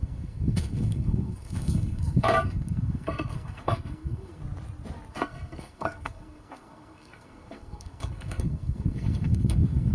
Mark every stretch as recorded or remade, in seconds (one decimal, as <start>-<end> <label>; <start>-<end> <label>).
0.0-4.4 remade; 4.4-5.1 recorded; 5.1-9.9 remade